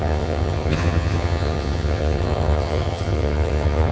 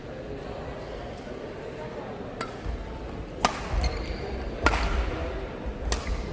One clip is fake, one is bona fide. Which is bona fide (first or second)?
second